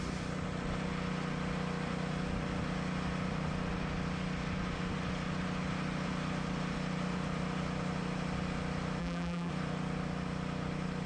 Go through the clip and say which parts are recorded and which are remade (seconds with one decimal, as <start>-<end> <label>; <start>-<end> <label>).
0.0-9.0 recorded; 9.0-9.5 remade; 9.5-11.1 recorded